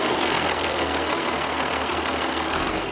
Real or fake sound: fake